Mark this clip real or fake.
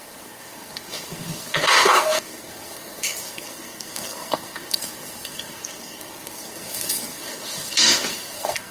fake